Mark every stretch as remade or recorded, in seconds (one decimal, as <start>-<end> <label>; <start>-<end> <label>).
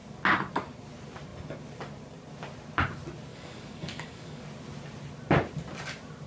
0.0-3.3 recorded; 3.3-4.4 remade; 4.4-6.3 recorded